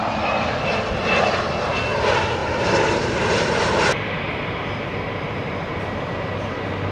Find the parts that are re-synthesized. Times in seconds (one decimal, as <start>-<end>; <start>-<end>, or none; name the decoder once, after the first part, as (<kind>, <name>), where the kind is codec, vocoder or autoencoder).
2.4-6.0 (vocoder, BigVGAN v2)